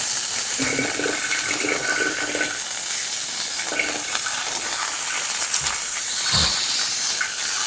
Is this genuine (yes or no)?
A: yes